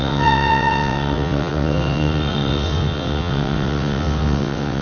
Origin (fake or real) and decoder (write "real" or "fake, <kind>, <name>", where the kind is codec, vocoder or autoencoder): fake, vocoder, WaveNeXt